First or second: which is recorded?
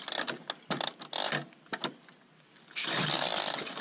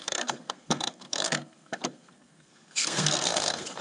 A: first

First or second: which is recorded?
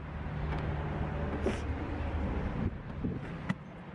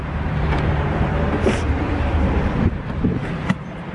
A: first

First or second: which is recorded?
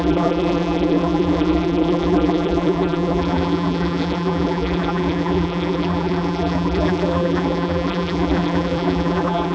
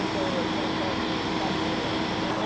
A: second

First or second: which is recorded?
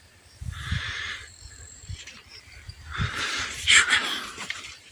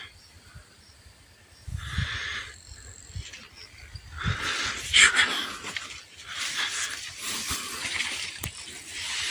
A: second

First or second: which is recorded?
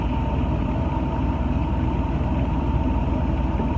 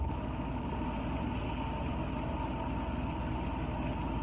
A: second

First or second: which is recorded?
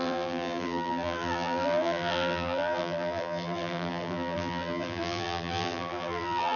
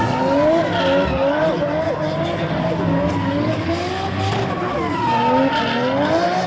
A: second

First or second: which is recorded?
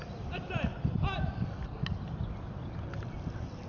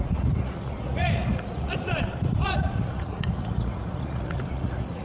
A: first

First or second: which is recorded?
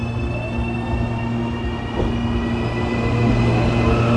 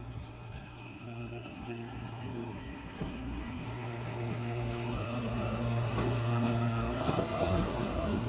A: first